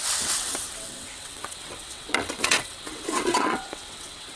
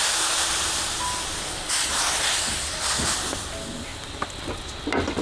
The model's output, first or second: first